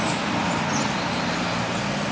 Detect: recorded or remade recorded